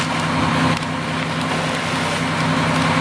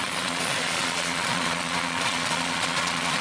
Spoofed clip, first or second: second